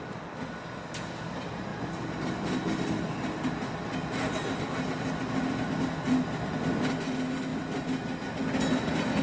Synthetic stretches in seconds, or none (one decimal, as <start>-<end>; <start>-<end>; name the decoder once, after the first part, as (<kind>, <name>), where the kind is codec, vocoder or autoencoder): none